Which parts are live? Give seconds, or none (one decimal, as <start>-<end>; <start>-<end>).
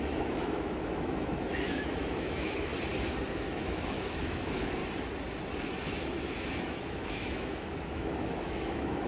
2.7-3.3; 4.8-5.6